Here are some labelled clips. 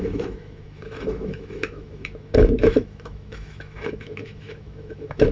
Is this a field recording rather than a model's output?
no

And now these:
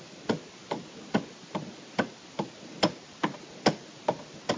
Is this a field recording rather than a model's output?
yes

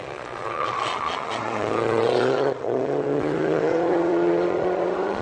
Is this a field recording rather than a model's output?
no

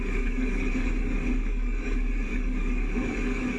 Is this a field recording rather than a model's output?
no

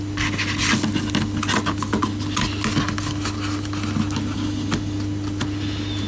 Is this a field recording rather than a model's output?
yes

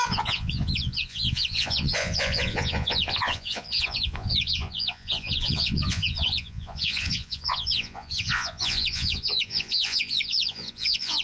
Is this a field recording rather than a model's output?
no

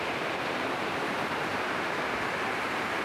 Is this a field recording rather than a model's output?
no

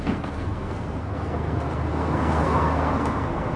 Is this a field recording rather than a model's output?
no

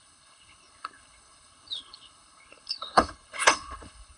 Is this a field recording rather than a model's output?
no